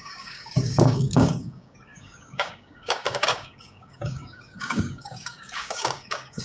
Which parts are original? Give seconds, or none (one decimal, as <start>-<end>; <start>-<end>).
none